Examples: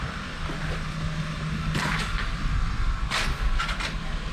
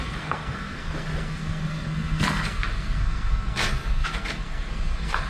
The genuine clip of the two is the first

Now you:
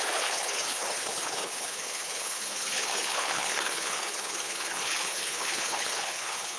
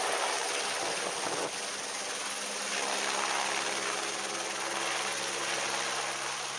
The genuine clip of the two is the second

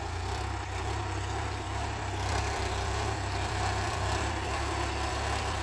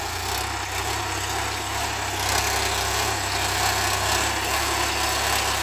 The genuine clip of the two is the second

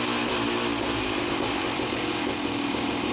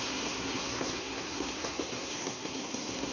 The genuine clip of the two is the first